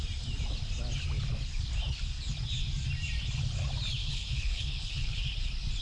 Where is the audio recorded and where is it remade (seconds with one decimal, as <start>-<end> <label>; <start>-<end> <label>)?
0.0-4.0 recorded; 4.0-5.2 remade; 5.2-5.8 recorded

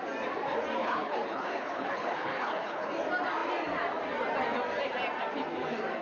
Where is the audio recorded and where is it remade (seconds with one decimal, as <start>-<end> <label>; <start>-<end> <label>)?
0.0-0.8 recorded; 0.8-2.9 remade; 2.9-6.0 recorded

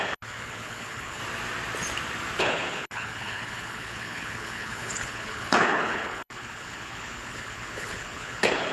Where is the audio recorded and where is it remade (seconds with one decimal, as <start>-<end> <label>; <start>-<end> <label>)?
0.0-1.2 remade; 1.2-2.4 recorded; 2.4-8.7 remade

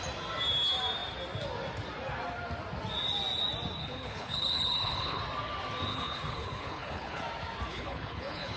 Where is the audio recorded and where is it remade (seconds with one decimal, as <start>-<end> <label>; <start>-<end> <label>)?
0.0-3.8 recorded; 3.8-5.2 remade; 5.2-5.9 recorded; 5.9-7.2 remade; 7.2-7.7 recorded; 7.7-8.6 remade

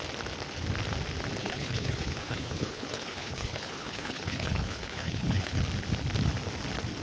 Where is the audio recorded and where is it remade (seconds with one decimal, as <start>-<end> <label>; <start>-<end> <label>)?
0.0-1.4 recorded; 1.4-5.6 remade; 5.6-7.0 recorded